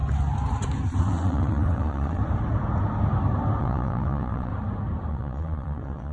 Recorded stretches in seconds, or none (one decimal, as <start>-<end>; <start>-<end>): 0.0-1.0; 2.2-3.6; 4.5-5.1